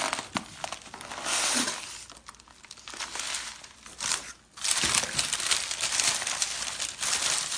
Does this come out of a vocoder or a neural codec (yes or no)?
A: no